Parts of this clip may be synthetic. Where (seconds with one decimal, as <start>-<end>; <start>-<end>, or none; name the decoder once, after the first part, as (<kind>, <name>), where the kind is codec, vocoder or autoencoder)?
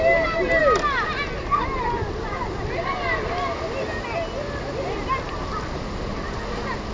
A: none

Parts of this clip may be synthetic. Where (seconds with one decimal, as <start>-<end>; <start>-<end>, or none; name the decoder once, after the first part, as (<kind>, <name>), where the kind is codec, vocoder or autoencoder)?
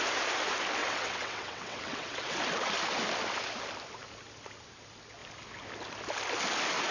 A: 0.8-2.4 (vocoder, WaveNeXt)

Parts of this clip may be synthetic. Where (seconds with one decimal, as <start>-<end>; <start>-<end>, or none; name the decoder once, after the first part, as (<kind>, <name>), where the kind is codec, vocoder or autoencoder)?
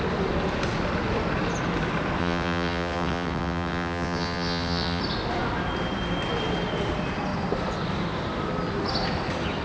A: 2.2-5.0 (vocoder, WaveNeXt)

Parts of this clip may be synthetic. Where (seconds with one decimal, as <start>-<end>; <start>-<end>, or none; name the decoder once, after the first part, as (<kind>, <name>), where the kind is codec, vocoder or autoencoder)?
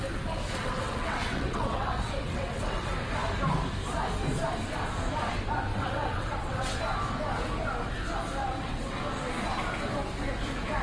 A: 0.6-2.9 (vocoder, WaveNeXt); 5.7-6.8; 8.4-9.0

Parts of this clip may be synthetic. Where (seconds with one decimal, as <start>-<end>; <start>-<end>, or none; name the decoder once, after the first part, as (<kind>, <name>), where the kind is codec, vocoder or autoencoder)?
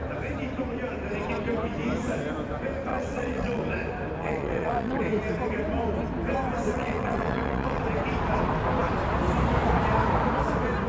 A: 2.9-3.6 (vocoder, WaveNeXt); 4.2-5.0; 6.7-7.8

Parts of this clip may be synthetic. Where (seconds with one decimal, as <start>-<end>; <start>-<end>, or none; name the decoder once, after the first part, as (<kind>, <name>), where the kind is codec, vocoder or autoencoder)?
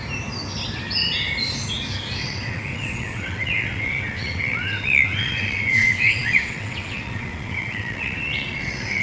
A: 2.2-9.0 (vocoder, WaveNeXt)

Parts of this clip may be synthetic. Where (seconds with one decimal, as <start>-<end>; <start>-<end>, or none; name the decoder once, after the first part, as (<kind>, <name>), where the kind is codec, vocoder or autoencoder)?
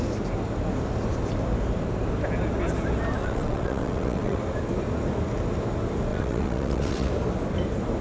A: 3.2-4.4 (vocoder, WaveNeXt); 6.1-7.1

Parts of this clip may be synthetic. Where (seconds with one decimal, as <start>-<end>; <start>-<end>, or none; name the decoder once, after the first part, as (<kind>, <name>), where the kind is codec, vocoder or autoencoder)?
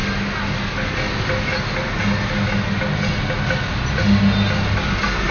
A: none